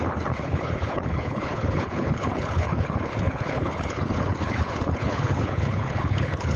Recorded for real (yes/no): no